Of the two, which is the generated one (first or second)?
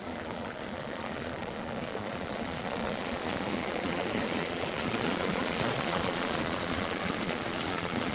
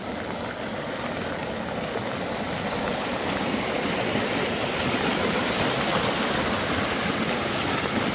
first